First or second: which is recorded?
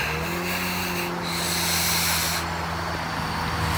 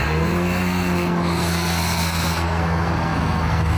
first